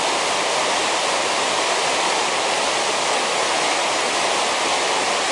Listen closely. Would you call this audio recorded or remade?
recorded